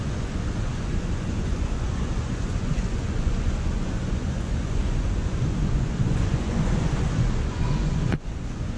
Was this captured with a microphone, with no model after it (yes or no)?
no